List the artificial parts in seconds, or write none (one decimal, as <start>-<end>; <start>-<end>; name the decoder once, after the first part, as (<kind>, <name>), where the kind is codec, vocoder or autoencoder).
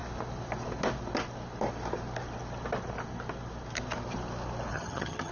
4.7-5.3 (vocoder, HiFi-GAN)